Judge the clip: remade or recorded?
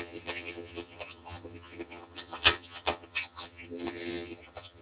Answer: remade